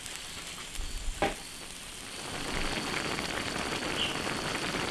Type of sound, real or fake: real